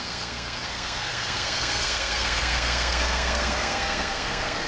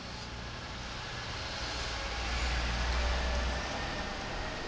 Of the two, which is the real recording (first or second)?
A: second